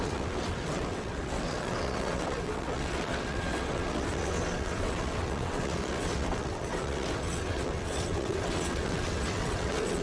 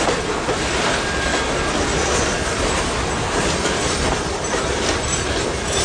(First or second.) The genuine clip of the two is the second